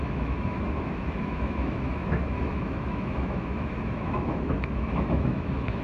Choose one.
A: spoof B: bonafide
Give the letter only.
A